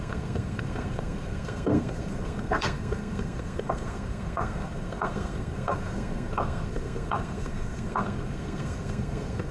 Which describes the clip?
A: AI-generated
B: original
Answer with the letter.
A